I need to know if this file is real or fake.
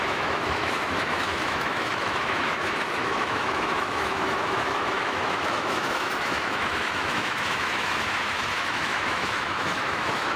fake